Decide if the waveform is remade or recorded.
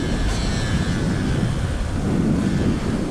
recorded